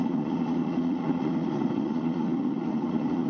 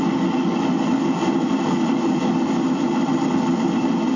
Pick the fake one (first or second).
first